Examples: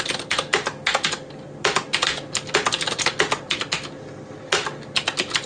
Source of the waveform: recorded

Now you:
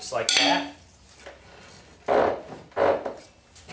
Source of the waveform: recorded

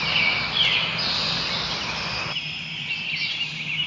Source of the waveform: recorded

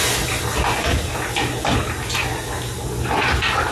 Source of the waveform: recorded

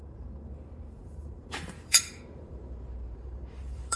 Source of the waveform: remade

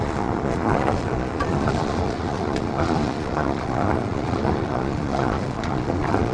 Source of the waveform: remade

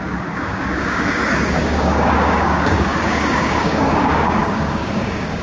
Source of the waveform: remade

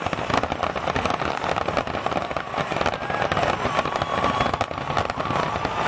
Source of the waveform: recorded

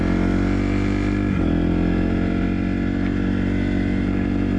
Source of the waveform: recorded